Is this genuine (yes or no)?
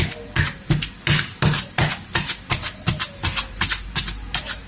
yes